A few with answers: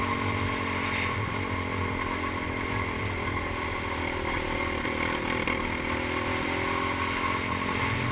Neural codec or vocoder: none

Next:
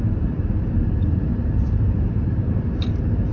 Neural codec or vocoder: none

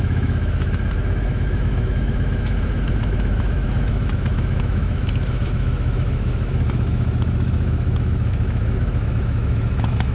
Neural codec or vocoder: autoencoder, DAC-VAE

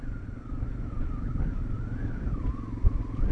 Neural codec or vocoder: none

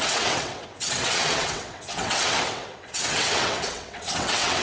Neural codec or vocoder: vocoder, WaveNeXt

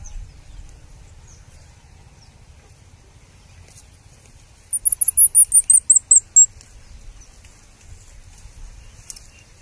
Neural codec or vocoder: none